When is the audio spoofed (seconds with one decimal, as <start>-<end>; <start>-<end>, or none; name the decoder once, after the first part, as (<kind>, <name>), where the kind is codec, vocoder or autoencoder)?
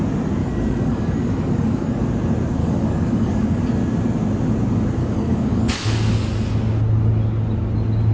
0.4-2.0 (codec, DAC); 2.6-3.6; 5.0-6.3